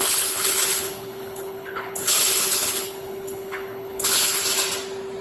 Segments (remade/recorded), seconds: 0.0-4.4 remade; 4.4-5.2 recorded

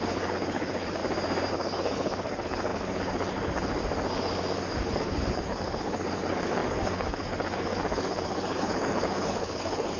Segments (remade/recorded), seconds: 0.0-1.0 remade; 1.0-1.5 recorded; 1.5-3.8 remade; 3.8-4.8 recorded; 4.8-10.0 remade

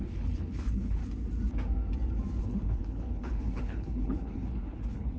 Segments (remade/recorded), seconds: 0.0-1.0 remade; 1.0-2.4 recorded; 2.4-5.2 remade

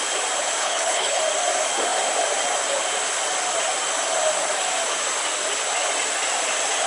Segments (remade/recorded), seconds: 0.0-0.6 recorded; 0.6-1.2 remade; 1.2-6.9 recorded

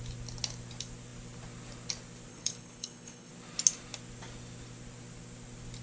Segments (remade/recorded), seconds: 0.0-2.3 recorded; 2.3-3.3 remade; 3.3-5.8 recorded

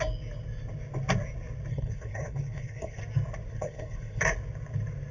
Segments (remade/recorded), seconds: 0.0-1.7 recorded; 1.7-3.0 remade; 3.0-3.5 recorded; 3.5-4.2 remade; 4.2-5.1 recorded

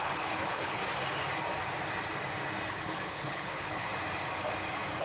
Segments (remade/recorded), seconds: 0.0-0.8 remade; 0.8-2.7 recorded; 2.7-3.9 remade; 3.9-5.0 recorded

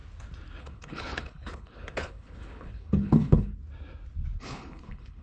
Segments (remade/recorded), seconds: 0.0-0.6 recorded; 0.6-3.5 remade; 3.5-4.4 recorded; 4.4-5.2 remade